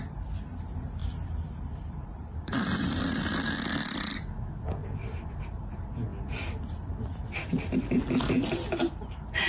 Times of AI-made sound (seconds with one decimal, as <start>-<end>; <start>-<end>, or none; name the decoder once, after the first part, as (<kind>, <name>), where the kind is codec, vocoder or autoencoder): 1.0-3.0 (vocoder, BigVGAN v2); 4.8-5.3; 6.1-6.7